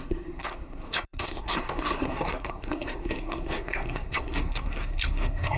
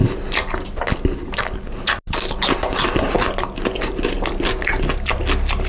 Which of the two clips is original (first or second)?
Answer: second